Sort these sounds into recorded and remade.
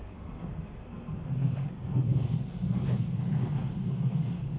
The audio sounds remade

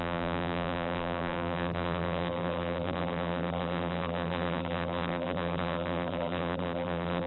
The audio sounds remade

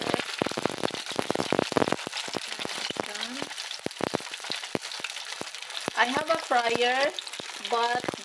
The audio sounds recorded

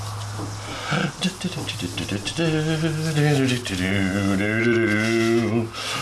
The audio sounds recorded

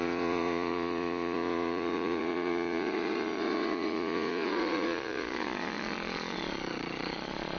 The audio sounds remade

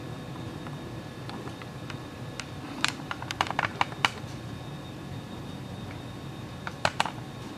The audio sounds remade